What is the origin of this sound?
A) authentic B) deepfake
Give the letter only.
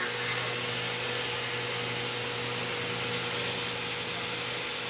A